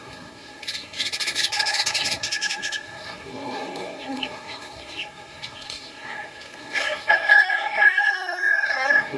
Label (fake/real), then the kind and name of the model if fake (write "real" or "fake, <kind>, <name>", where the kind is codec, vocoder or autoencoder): fake, codec, SNAC